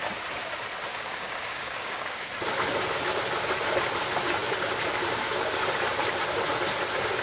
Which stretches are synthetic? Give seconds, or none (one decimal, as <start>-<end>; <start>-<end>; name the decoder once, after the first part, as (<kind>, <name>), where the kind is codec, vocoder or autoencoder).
0.9-2.3 (codec, DAC)